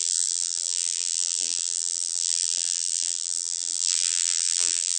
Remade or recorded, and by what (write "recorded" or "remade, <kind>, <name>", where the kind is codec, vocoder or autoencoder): remade, vocoder, BigVGAN v2